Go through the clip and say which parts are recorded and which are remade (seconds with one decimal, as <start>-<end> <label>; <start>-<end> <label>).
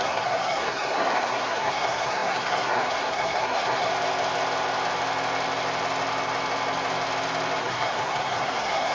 0.0-3.9 remade; 3.9-7.6 recorded; 7.6-8.9 remade